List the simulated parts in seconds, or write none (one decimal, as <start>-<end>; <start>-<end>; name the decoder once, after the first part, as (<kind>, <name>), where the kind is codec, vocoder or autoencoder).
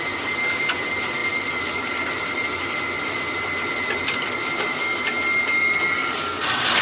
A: none